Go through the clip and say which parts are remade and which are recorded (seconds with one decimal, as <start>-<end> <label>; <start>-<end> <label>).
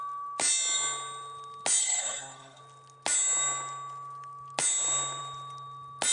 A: 0.0-1.8 recorded; 1.8-2.6 remade; 2.6-6.1 recorded